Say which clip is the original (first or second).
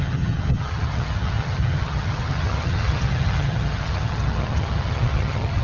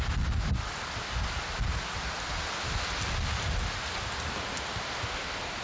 second